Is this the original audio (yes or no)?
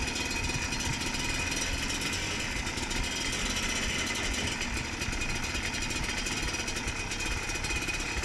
yes